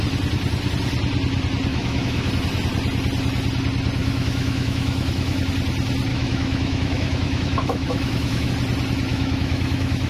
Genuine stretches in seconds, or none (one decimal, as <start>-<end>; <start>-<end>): 0.0-1.7; 2.3-4.0; 5.5-6.1; 8.5-9.1